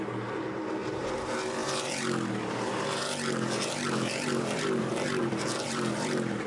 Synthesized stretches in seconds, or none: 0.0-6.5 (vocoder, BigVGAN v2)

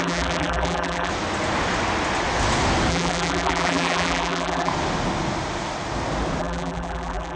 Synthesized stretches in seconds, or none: 0.0-1.1 (vocoder, BigVGAN v2); 2.9-4.7; 6.4-7.4

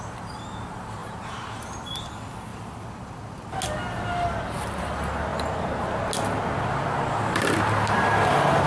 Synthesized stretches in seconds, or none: 1.0-2.1 (vocoder, BigVGAN v2); 2.5-3.5

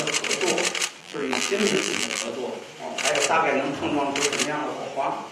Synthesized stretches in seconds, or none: 1.0-2.3 (vocoder, BigVGAN v2)